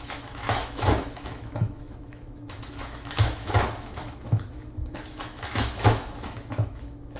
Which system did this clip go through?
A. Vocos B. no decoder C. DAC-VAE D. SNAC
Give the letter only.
C